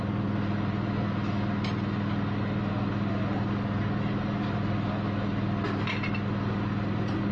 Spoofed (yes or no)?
no